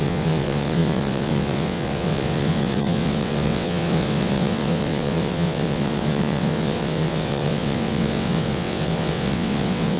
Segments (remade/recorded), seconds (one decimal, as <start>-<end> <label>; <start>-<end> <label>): 0.0-10.0 remade